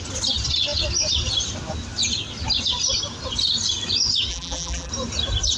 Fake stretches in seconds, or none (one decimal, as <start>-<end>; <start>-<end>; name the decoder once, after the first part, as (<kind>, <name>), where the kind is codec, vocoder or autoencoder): 4.3-4.9 (vocoder, BigVGAN v2)